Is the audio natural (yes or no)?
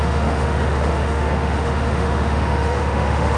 no